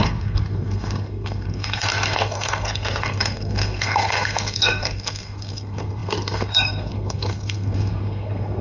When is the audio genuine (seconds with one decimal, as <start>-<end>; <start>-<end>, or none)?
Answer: none